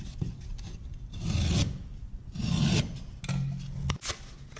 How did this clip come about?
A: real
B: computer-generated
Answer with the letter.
A